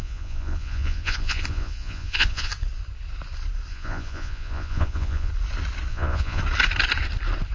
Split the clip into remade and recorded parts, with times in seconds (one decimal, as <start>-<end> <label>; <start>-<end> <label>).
0.0-2.5 remade; 2.5-3.7 recorded; 3.7-5.3 remade; 5.3-5.9 recorded; 5.9-6.4 remade; 6.4-7.5 recorded